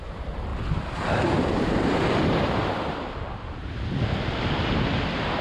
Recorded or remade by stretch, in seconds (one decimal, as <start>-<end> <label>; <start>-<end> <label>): 0.0-0.5 recorded; 0.5-3.7 remade; 3.7-5.4 recorded